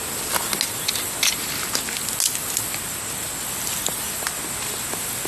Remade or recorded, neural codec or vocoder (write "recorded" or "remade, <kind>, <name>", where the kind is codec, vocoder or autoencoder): recorded